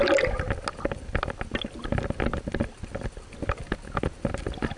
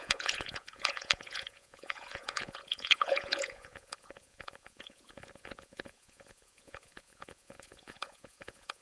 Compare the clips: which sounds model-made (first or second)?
second